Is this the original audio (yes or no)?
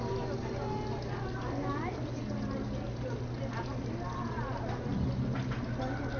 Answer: yes